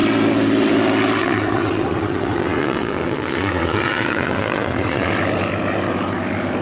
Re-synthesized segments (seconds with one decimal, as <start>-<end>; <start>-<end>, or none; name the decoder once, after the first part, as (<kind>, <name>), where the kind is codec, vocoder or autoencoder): 1.2-5.1 (vocoder, WaveNeXt)